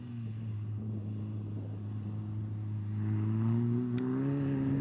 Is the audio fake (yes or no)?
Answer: no